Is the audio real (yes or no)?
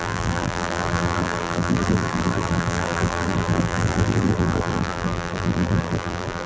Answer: no